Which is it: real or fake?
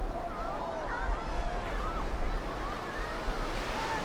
real